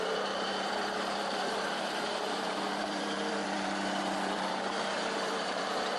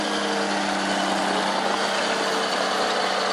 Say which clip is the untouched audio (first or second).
second